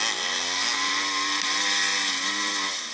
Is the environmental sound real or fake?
real